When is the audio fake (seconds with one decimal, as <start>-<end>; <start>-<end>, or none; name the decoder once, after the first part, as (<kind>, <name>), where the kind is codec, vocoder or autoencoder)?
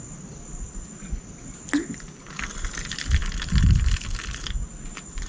none